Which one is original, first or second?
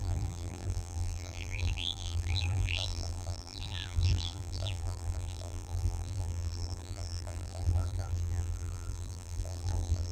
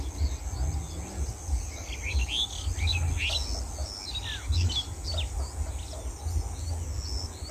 second